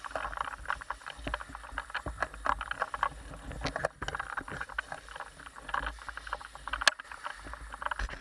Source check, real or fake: real